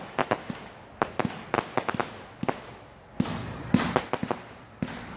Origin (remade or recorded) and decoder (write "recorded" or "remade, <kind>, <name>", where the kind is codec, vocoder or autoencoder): recorded